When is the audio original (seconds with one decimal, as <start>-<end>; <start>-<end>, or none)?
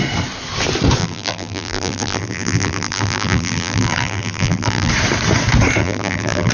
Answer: 0.0-1.0; 4.9-5.8